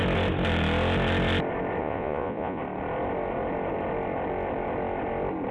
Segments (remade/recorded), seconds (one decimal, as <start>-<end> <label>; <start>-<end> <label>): 0.0-1.8 recorded; 1.8-2.6 remade; 2.6-5.5 recorded